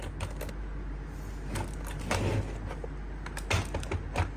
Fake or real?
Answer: real